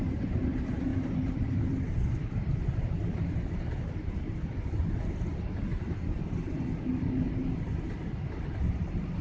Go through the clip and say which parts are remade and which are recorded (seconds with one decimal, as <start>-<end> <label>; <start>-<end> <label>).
0.0-0.9 recorded; 0.9-4.1 remade; 4.1-5.7 recorded; 5.7-6.2 remade; 6.2-9.2 recorded